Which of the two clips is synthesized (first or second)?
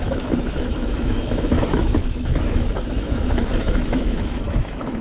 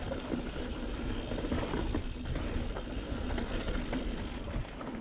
first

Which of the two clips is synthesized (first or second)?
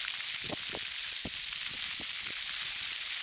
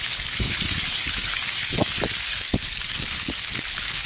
second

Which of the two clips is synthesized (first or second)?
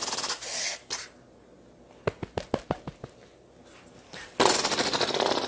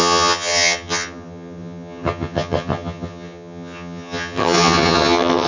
second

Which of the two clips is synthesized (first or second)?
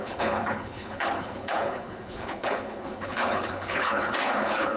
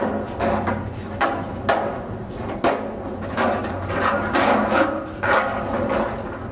first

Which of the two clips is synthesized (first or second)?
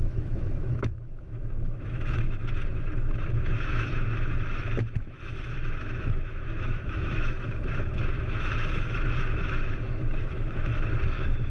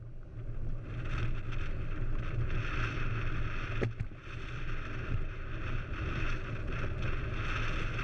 first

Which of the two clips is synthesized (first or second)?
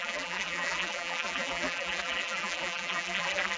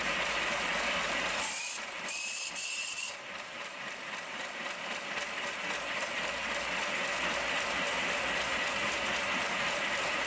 first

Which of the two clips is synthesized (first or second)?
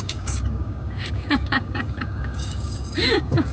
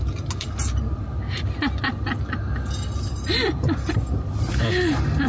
first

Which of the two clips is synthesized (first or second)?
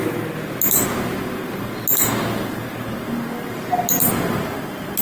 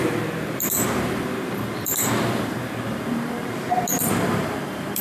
second